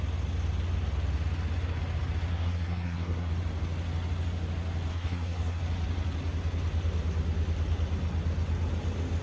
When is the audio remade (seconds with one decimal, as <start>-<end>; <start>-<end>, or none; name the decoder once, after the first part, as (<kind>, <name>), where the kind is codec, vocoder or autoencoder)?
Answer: 2.3-3.3 (codec, SNAC); 4.9-5.6